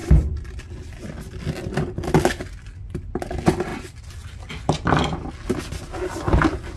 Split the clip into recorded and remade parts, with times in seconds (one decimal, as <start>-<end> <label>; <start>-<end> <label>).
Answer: 0.0-6.8 recorded